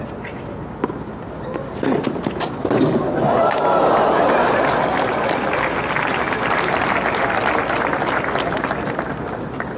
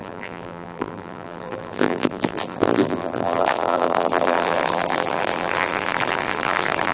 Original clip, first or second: first